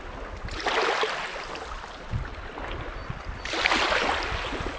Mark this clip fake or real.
real